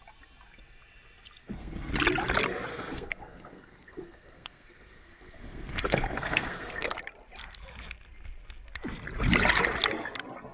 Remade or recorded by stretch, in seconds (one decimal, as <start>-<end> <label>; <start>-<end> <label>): 0.0-1.4 recorded; 1.4-1.9 remade; 1.9-2.7 recorded; 2.7-7.0 remade; 7.0-10.5 recorded